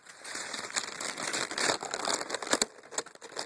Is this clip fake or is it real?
real